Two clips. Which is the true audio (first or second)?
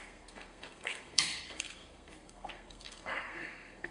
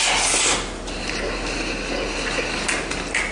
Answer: second